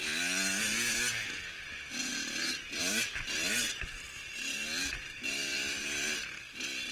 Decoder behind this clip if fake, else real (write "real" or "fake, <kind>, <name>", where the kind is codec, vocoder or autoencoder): real